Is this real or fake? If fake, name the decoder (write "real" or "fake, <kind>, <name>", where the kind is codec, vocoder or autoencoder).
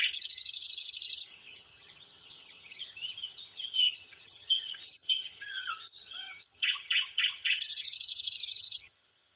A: fake, vocoder, HiFi-GAN